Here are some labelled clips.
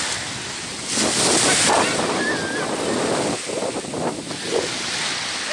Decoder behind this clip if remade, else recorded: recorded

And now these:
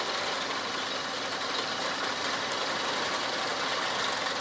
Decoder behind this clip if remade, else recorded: recorded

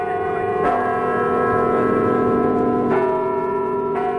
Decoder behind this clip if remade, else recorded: remade, vocoder, Vocos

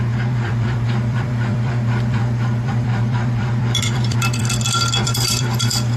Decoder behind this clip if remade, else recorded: remade, vocoder, BigVGAN v2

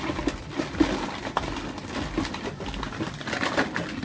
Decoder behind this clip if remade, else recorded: recorded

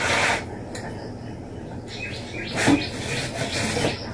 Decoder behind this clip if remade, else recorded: recorded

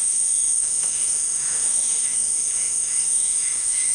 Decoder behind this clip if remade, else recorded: remade, autoencoder, DAC-VAE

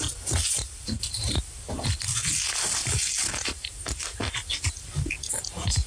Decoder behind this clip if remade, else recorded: recorded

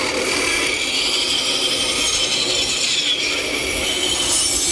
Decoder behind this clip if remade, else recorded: recorded